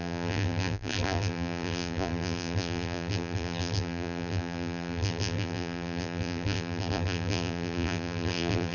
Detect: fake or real fake